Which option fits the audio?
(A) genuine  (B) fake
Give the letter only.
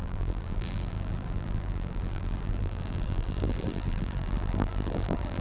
B